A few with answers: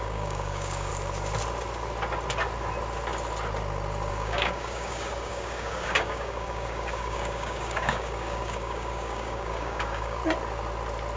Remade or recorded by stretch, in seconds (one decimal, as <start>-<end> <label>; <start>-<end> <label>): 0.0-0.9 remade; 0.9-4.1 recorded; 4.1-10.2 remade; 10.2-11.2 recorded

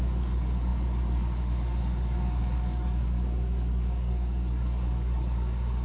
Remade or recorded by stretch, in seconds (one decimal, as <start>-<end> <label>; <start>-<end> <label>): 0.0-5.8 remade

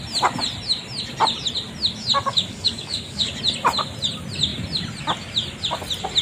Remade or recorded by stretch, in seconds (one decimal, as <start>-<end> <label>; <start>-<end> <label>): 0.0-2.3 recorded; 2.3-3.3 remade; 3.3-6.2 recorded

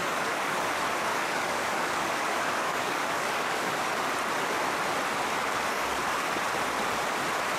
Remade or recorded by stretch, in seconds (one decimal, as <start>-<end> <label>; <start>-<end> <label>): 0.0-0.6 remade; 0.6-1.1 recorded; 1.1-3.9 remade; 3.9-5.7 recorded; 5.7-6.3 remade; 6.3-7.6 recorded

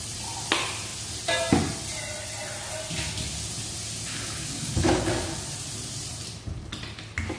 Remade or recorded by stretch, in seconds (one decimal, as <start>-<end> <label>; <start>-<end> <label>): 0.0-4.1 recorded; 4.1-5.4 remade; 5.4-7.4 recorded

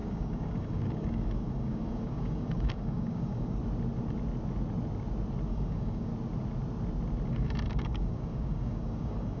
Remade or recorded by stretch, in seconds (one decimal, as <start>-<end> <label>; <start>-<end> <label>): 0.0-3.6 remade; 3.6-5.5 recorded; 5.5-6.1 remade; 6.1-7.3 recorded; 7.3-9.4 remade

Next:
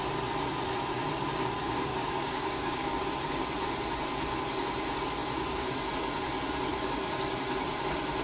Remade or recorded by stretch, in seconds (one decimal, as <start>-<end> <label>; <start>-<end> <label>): 0.0-1.6 recorded; 1.6-3.0 remade; 3.0-6.7 recorded; 6.7-7.3 remade; 7.3-8.2 recorded

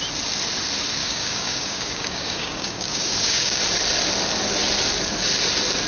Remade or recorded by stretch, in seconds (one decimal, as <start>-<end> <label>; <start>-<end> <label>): 0.0-1.0 recorded; 1.0-3.6 remade; 3.6-5.9 recorded